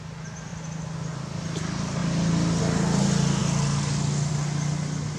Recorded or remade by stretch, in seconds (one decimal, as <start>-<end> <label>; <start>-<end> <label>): 0.0-5.2 recorded